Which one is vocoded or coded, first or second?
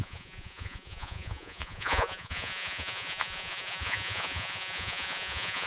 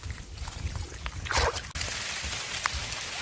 first